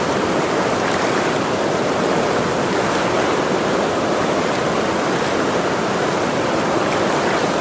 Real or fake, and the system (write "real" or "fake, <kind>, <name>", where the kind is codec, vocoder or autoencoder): real